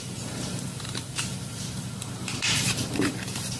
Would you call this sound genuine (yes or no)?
no